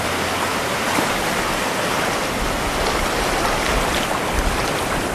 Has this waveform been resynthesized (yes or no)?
no